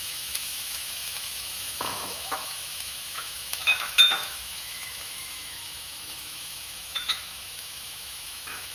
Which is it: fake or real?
fake